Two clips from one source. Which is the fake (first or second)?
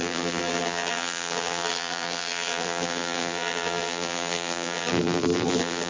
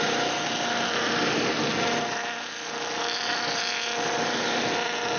first